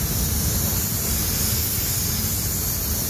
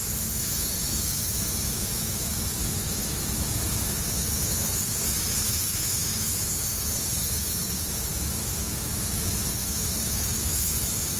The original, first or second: first